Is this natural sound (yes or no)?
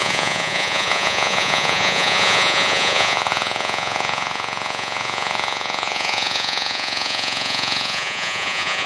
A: no